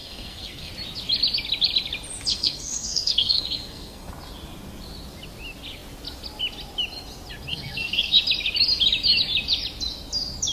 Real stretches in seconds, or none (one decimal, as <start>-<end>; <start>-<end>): 0.7-2.3; 4.1-7.5; 8.2-10.5

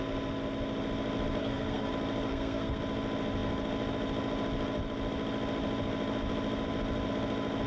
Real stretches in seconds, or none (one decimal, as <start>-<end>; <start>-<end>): 0.0-1.4; 1.9-2.3; 2.8-7.7

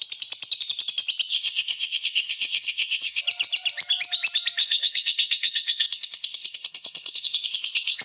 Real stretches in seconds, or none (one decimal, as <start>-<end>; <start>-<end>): 0.0-1.3; 3.2-4.6

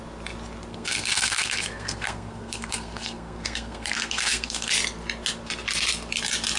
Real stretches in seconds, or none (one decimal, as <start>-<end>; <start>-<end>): 0.0-0.7; 4.7-6.6

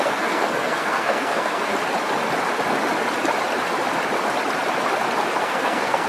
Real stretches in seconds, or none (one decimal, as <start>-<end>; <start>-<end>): 1.7-5.4

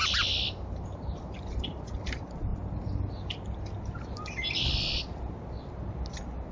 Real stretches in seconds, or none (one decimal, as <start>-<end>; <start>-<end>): 0.0-6.5

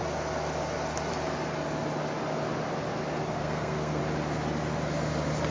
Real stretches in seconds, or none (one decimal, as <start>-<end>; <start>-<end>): 0.0-3.3; 4.0-5.5

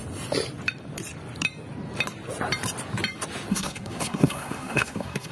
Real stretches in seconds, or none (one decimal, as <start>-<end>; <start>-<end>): 0.0-3.5